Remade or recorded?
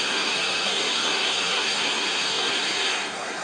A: remade